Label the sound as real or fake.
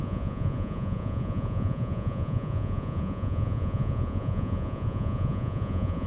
fake